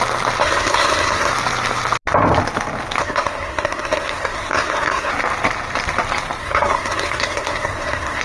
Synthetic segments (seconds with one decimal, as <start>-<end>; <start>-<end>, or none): 0.4-1.3; 3.0-5.1; 6.4-8.2